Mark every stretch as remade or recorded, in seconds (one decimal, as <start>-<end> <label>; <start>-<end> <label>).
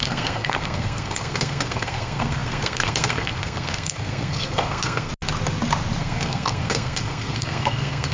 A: 0.0-5.1 remade; 5.1-6.0 recorded; 6.0-8.1 remade